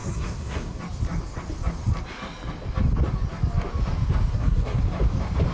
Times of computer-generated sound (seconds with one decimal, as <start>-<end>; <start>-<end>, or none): 0.0-0.8; 4.3-4.8